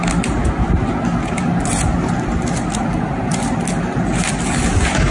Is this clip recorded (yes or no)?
yes